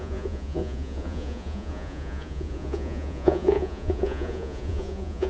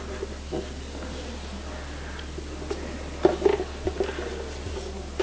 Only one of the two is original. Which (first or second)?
second